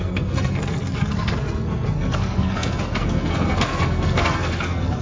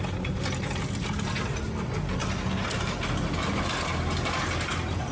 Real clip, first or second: second